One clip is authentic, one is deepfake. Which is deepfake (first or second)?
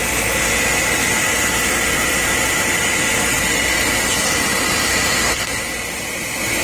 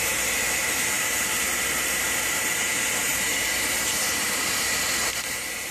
second